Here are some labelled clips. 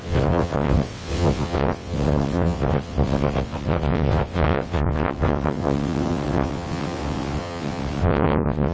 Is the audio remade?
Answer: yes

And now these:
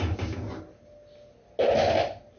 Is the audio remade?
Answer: no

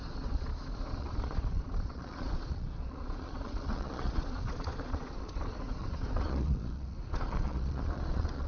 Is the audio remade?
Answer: yes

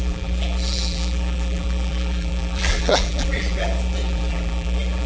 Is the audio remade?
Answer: yes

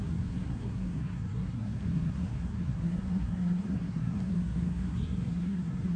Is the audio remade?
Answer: yes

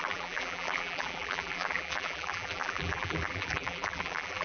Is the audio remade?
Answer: yes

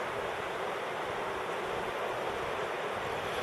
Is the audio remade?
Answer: no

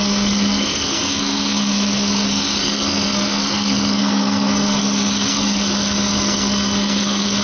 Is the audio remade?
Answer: yes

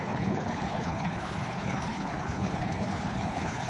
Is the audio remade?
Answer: yes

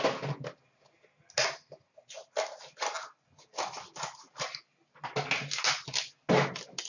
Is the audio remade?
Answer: no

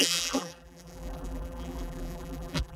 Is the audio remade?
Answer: yes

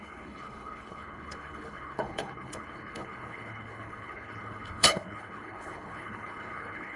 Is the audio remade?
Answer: yes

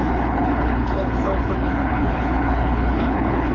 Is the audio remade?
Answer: yes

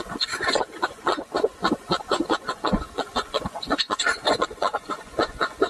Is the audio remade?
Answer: yes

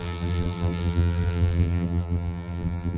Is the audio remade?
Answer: yes